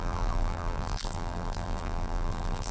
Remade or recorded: remade